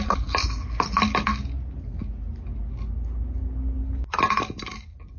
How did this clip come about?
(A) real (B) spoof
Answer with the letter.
A